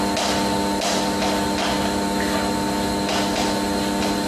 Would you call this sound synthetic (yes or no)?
no